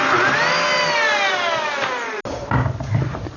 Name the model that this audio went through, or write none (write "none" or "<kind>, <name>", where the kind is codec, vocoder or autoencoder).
none